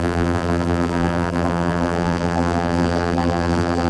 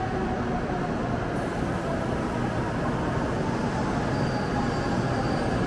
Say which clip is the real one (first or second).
second